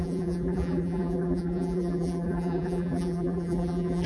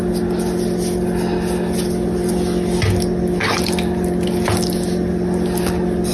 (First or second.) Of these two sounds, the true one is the second